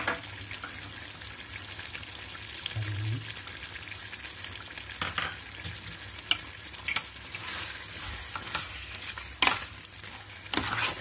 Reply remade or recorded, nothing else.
recorded